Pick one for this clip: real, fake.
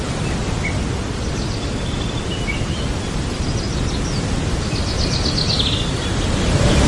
real